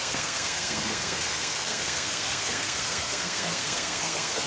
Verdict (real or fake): fake